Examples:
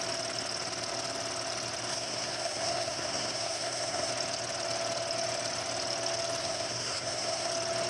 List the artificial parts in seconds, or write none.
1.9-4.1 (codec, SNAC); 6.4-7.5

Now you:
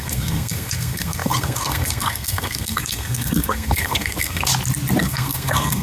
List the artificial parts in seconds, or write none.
0.0-4.5 (codec, SNAC); 5.0-5.8